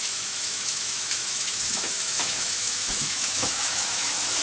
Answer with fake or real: fake